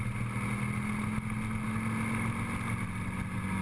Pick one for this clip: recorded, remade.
recorded